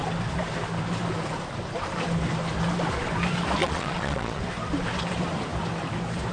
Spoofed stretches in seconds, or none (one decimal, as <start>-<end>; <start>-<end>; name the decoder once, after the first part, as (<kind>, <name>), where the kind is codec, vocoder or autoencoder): 3.6-4.4 (vocoder, Vocos)